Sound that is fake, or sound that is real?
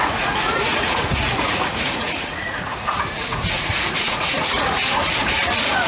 fake